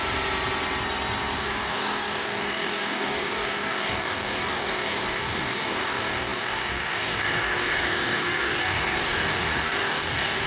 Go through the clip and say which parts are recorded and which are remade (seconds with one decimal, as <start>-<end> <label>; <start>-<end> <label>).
0.0-1.4 recorded; 1.4-10.5 remade